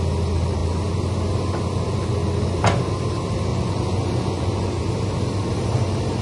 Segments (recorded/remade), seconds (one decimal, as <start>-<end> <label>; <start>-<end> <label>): 0.0-3.5 recorded; 3.5-4.8 remade; 4.8-6.2 recorded